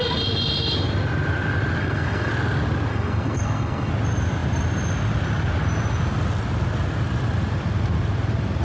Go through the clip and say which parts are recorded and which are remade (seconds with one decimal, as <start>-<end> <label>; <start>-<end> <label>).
0.0-1.8 recorded; 1.8-2.3 remade; 2.3-2.9 recorded; 2.9-3.9 remade; 3.9-8.6 recorded